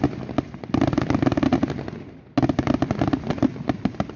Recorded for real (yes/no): yes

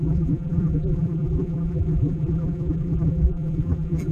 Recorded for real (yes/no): no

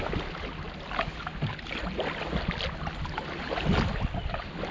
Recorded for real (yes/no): yes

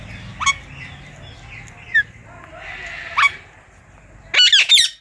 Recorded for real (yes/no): yes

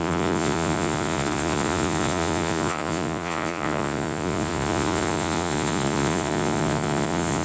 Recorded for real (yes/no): no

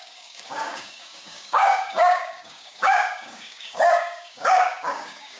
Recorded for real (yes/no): no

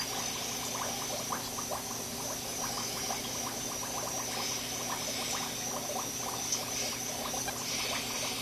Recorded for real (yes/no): yes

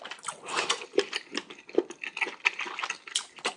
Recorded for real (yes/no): yes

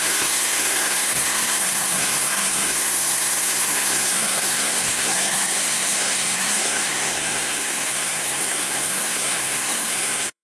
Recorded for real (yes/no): no